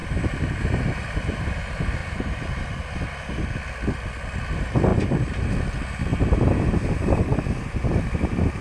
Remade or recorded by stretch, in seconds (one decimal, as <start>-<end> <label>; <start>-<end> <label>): 0.0-1.6 remade; 1.6-2.0 recorded; 2.0-2.6 remade; 2.6-4.9 recorded; 4.9-5.4 remade; 5.4-6.1 recorded; 6.1-7.2 remade; 7.2-8.6 recorded